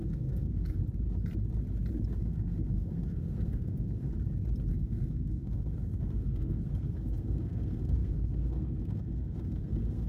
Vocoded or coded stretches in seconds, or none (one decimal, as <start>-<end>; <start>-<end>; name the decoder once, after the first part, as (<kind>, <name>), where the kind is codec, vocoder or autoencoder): 0.0-0.8 (codec, SNAC); 2.1-4.1; 4.7-10.1